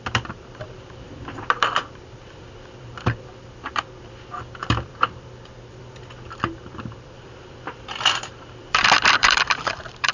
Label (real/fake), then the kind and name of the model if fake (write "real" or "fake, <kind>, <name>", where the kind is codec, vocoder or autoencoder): fake, vocoder, BigVGAN v2